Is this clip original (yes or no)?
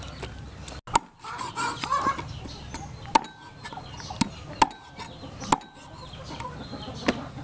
yes